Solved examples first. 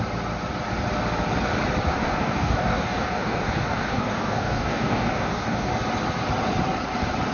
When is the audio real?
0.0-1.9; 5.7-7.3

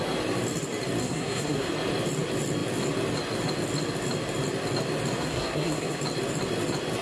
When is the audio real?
0.0-1.0; 1.7-5.2; 6.0-7.0

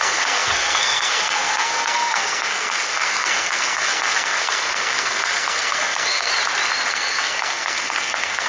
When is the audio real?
6.3-6.9